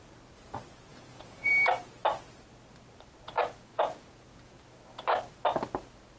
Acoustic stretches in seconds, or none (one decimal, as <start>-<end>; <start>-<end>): 0.0-0.9; 1.5-3.7; 4.6-6.2